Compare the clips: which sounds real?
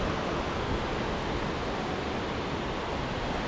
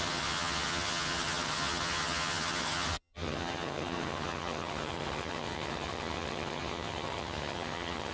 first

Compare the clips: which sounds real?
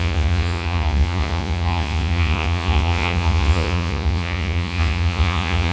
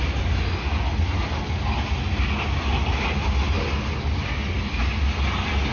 second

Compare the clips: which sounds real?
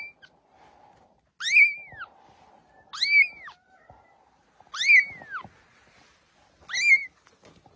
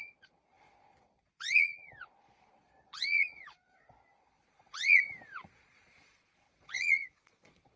first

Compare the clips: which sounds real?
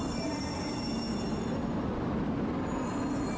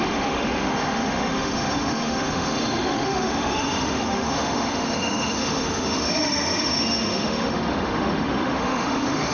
first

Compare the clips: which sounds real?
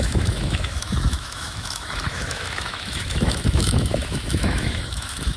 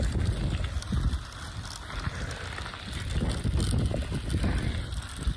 second